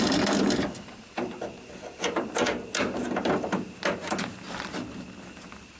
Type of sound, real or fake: real